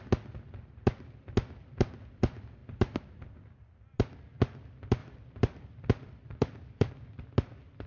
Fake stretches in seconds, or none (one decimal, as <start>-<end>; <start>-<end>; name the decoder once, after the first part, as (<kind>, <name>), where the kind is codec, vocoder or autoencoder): 2.6-3.6 (vocoder, BigVGAN v2); 5.0-6.9